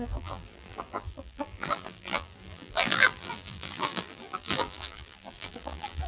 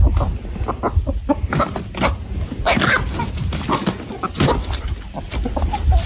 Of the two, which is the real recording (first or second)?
second